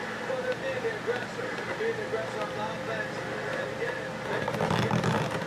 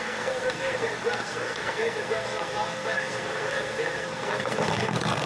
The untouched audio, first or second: first